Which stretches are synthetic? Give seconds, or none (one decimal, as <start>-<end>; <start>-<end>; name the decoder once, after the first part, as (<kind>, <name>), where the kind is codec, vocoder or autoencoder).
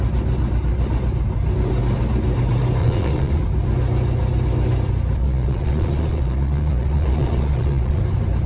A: 2.8-3.4 (vocoder, Vocos); 5.2-8.0